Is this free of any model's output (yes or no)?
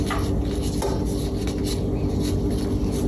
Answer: yes